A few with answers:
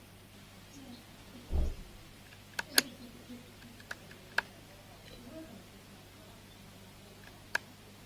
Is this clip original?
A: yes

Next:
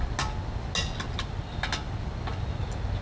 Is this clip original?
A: yes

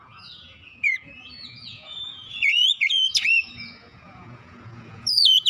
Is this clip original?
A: no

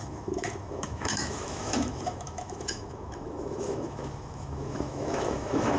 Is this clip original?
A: no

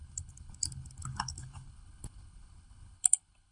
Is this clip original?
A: no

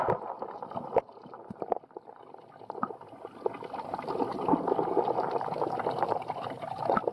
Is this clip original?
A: yes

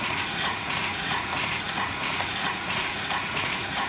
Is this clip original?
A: no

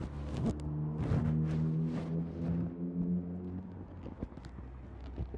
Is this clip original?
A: yes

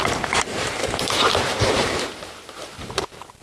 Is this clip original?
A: no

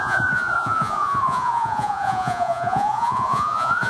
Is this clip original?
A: no